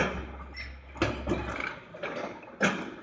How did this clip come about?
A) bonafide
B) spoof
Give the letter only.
A